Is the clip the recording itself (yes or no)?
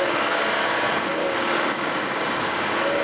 no